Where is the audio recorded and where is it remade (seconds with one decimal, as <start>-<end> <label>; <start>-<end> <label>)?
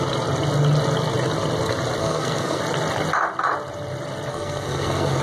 0.0-2.0 recorded; 2.0-2.6 remade; 2.6-4.3 recorded; 4.3-5.2 remade